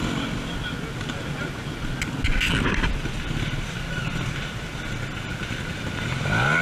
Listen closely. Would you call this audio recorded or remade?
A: recorded